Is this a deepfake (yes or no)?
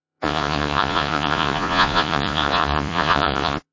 yes